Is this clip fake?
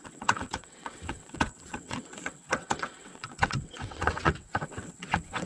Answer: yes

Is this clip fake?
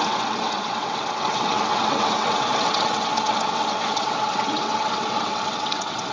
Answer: yes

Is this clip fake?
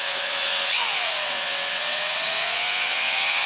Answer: yes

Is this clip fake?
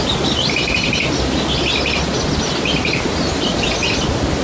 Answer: no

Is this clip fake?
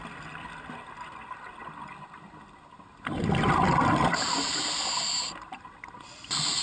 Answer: no